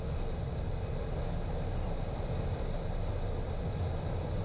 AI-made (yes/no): no